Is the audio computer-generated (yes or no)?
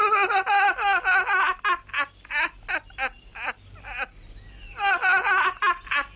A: no